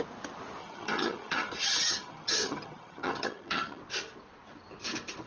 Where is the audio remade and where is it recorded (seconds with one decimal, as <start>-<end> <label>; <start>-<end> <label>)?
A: 0.0-0.6 recorded; 0.6-3.8 remade; 3.8-5.3 recorded